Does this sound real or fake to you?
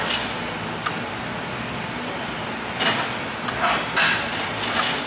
real